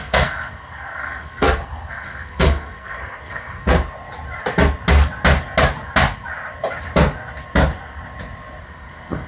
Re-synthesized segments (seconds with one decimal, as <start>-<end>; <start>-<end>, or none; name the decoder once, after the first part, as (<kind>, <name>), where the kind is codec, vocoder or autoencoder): 0.0-3.7 (codec, SNAC); 8.6-9.3